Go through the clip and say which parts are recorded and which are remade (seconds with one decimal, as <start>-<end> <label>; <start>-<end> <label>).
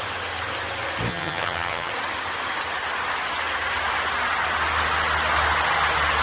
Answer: 0.0-1.1 recorded; 1.1-1.9 remade; 1.9-6.2 recorded